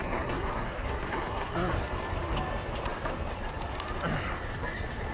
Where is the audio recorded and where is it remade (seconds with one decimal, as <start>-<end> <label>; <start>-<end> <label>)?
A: 0.0-1.7 remade; 1.7-5.1 recorded